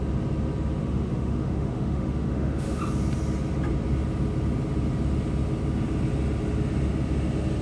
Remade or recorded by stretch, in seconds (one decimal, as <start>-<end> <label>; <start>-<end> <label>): 0.0-0.8 recorded; 0.8-2.8 remade; 2.8-7.6 recorded